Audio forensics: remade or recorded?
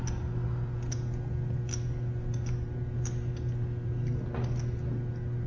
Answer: recorded